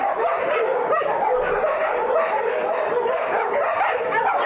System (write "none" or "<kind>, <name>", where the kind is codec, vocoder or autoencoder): none